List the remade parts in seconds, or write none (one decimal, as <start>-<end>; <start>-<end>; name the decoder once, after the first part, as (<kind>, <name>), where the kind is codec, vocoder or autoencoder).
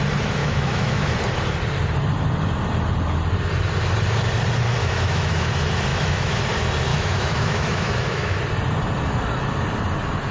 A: 0.4-1.1 (autoencoder, DAC-VAE); 4.8-5.5; 5.9-6.4; 6.9-8.4